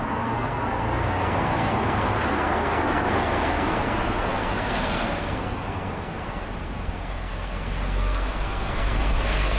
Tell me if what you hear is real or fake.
fake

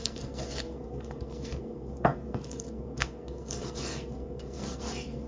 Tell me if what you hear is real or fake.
fake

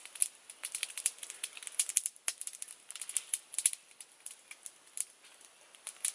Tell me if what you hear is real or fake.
real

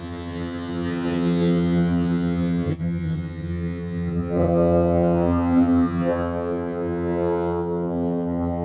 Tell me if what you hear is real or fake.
fake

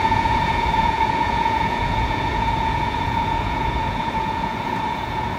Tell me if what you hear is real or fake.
fake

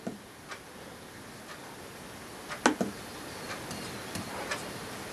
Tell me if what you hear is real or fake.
real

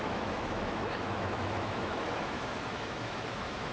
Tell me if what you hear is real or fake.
fake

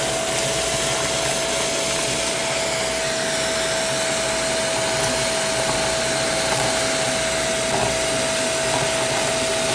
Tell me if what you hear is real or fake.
real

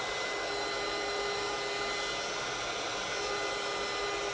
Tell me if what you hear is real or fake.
real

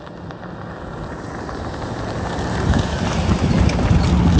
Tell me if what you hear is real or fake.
real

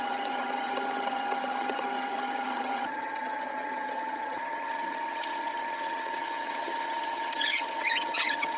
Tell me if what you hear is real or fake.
fake